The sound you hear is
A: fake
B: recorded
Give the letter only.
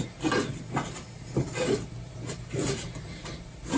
B